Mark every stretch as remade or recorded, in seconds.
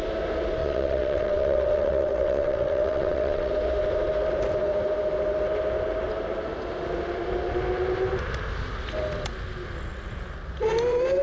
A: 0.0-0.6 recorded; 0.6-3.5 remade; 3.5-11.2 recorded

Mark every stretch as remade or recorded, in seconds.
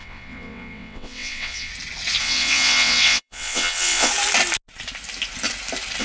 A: 0.0-1.7 remade; 1.7-2.2 recorded; 2.2-4.1 remade; 4.1-6.0 recorded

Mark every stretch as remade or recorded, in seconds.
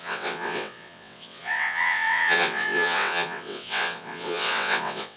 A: 0.0-5.2 remade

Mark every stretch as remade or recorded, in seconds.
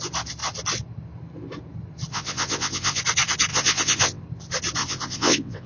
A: 0.0-2.1 recorded; 2.1-3.0 remade; 3.0-3.5 recorded; 3.5-4.2 remade; 4.2-4.8 recorded; 4.8-5.7 remade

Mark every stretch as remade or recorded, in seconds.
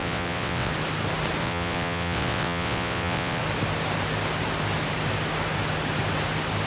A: 0.0-0.7 remade; 0.7-1.4 recorded; 1.4-3.4 remade; 3.4-6.7 recorded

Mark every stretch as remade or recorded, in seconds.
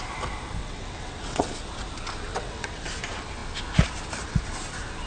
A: 0.0-0.6 recorded; 0.6-1.5 remade; 1.5-2.3 recorded; 2.3-2.8 remade; 2.8-5.1 recorded